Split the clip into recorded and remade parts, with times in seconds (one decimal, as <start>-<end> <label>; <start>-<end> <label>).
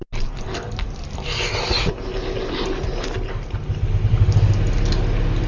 0.0-5.5 recorded